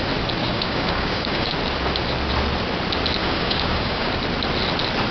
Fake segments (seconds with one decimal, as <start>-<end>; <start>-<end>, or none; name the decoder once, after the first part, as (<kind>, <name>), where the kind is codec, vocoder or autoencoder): 0.4-1.5 (codec, DAC); 3.2-4.1